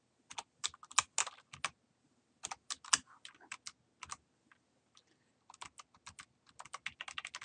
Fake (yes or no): no